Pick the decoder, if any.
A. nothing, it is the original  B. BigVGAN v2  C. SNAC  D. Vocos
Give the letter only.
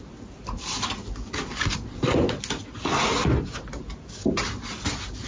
A